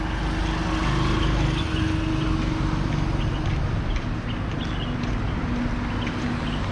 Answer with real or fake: real